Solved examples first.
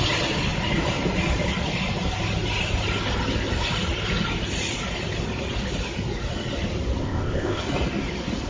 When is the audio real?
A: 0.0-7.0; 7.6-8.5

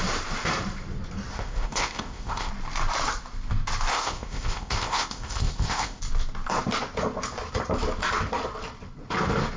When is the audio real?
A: 0.0-1.3; 2.5-3.9; 6.0-9.6

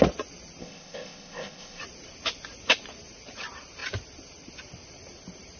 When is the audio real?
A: 0.0-0.6; 1.8-5.6